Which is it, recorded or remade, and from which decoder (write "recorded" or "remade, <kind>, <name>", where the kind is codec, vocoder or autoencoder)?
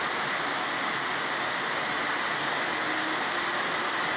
recorded